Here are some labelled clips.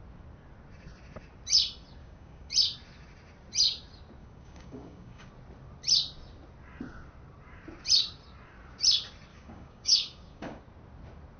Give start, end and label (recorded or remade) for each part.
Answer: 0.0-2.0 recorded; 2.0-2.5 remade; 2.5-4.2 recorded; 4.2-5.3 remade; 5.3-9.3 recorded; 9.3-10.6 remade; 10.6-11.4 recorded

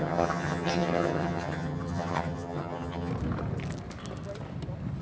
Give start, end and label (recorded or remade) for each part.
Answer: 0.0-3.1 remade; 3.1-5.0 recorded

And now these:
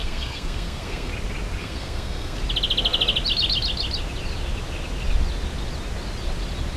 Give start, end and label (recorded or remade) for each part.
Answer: 0.0-1.1 remade; 1.1-1.6 recorded; 1.6-2.4 remade; 2.4-6.8 recorded

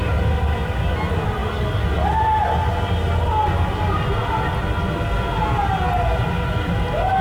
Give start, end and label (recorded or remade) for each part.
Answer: 0.0-7.2 recorded